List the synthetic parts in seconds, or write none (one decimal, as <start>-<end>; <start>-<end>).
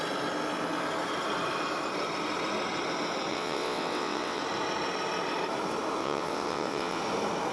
3.3-4.4; 6.0-7.0